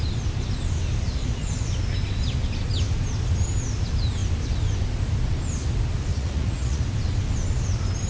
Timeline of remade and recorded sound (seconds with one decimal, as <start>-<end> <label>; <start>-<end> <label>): 0.0-6.1 recorded; 6.1-6.8 remade; 6.8-8.1 recorded